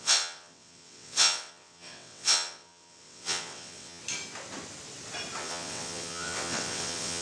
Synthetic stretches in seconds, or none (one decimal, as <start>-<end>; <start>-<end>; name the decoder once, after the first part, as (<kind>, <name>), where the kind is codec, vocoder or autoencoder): 0.0-4.0 (vocoder, WaveNeXt); 5.4-7.2

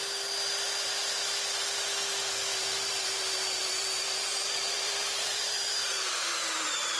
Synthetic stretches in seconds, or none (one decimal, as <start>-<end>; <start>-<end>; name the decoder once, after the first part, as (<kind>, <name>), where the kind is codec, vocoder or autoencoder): 2.5-7.0 (vocoder, BigVGAN v2)

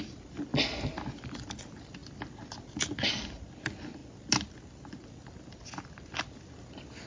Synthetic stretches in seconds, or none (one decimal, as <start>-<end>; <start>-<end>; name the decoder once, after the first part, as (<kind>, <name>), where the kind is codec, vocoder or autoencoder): none

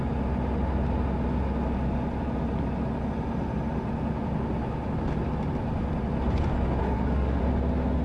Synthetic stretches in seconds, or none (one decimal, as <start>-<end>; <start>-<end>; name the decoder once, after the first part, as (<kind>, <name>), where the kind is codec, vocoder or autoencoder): 6.8-7.4 (codec, SNAC)

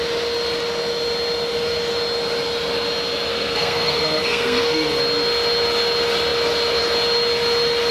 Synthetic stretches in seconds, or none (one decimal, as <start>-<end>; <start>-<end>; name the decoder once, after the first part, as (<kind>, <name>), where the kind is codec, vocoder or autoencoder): 3.3-5.0 (codec, SNAC)

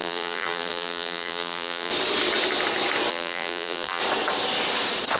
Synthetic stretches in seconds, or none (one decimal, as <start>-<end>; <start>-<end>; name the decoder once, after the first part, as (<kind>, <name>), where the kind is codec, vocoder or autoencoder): 0.0-1.9 (vocoder, BigVGAN v2); 3.1-4.0